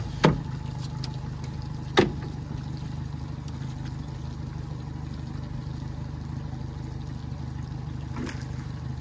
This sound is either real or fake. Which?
real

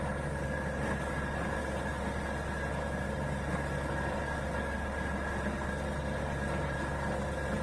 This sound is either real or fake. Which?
real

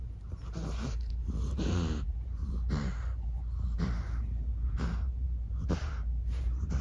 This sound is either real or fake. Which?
fake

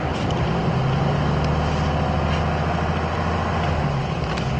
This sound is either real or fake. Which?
real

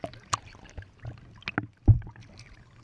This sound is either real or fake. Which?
real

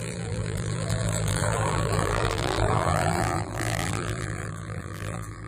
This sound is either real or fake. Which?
fake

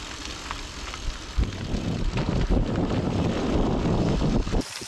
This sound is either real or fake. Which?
fake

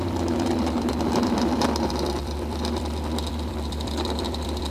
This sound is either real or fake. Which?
fake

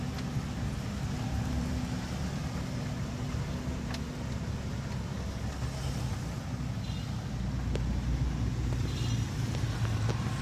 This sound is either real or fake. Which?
real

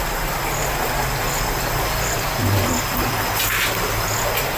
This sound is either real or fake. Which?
real